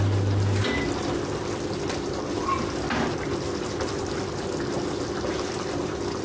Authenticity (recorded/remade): recorded